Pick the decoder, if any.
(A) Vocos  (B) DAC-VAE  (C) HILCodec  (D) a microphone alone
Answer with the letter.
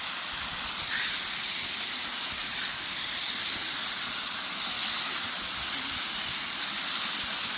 D